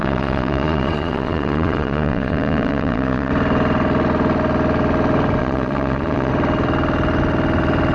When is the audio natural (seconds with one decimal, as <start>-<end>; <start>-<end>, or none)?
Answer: 3.3-5.4; 6.3-7.9

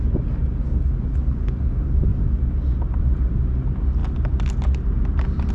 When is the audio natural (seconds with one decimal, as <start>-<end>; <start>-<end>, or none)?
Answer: 0.0-5.5

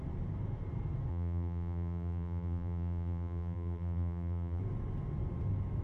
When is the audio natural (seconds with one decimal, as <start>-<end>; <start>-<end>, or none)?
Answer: 0.0-1.1; 4.6-5.8